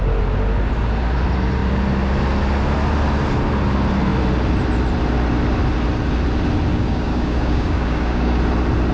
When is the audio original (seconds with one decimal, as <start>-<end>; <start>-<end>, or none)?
0.0-6.7; 8.4-8.9